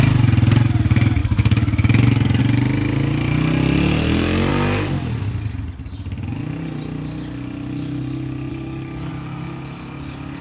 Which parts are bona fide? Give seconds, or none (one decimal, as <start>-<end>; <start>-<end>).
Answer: 0.0-1.2; 2.4-8.5; 9.1-10.4